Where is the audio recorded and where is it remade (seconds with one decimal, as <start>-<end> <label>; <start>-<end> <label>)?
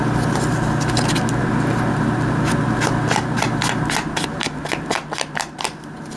0.0-6.2 recorded